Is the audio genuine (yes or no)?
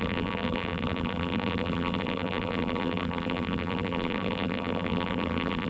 no